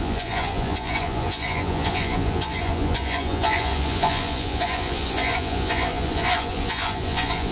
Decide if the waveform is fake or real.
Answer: fake